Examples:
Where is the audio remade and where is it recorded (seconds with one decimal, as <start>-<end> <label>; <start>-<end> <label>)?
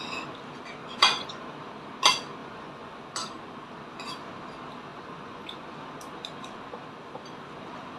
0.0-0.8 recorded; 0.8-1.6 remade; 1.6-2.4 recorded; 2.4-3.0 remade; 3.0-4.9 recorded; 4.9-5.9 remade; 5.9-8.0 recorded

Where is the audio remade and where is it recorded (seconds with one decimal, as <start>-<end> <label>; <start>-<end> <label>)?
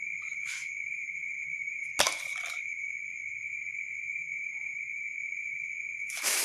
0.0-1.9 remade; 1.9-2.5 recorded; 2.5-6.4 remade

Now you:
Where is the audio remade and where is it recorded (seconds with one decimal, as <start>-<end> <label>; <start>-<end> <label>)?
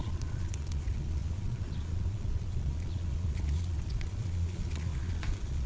0.0-5.7 remade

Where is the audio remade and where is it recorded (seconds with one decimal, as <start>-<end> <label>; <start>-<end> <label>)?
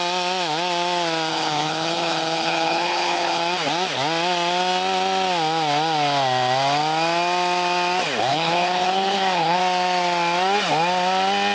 0.0-1.3 recorded; 1.3-3.4 remade; 3.4-8.3 recorded; 8.3-9.6 remade; 9.6-11.5 recorded